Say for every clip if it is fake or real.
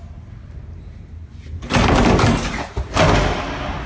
real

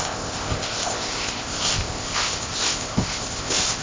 fake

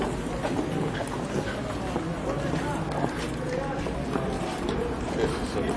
real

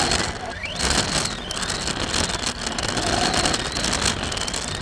real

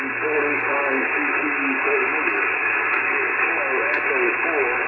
real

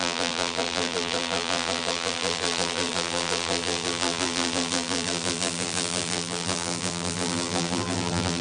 fake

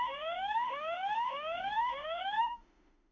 fake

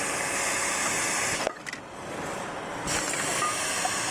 real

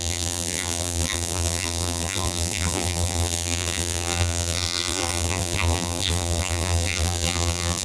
fake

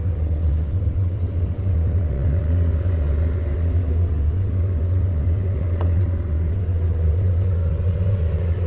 fake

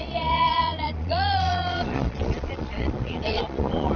fake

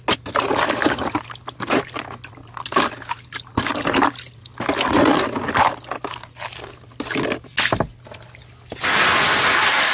real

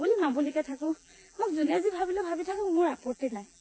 fake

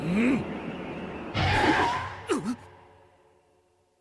fake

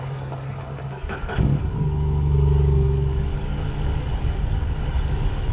fake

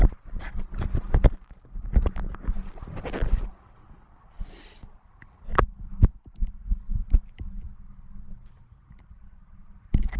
real